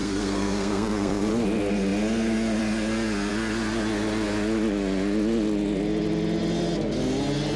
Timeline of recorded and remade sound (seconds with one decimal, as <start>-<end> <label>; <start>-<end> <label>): 0.0-1.3 remade; 1.3-7.6 recorded